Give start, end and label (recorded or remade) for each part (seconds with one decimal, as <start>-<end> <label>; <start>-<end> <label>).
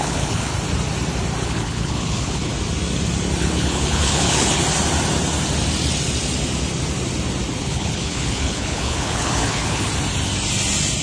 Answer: 0.0-0.5 remade; 0.5-1.4 recorded; 1.4-2.5 remade; 2.5-3.4 recorded; 3.4-4.6 remade; 4.6-7.6 recorded; 7.6-9.9 remade; 9.9-11.0 recorded